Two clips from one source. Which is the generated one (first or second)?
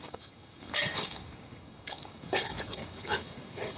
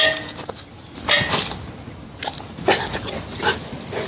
first